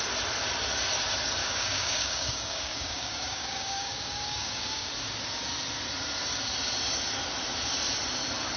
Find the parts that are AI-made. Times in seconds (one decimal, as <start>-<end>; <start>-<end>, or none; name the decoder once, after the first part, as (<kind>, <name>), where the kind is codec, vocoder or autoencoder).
1.4-4.9 (codec, DAC)